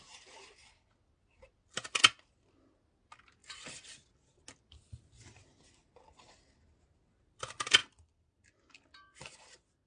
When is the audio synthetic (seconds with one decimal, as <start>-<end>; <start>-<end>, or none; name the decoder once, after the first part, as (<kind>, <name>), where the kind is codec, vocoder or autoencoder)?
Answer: 3.4-4.4 (vocoder, BigVGAN v2); 7.8-9.9